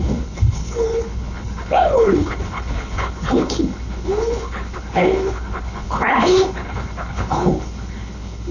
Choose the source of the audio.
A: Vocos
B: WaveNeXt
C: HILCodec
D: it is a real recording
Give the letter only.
C